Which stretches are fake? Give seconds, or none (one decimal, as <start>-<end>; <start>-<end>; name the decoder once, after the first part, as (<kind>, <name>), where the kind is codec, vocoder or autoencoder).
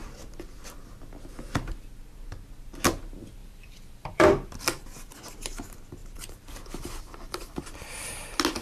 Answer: 3.4-5.1 (vocoder, BigVGAN v2); 6.0-7.6